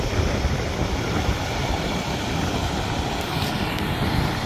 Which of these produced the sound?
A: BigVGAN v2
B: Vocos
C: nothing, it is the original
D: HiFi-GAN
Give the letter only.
A